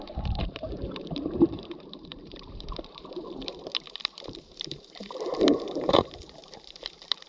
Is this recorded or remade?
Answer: remade